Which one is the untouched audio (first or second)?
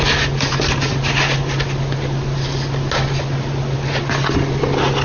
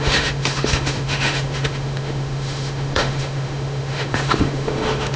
first